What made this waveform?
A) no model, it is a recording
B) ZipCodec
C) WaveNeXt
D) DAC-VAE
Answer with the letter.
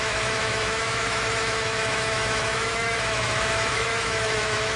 D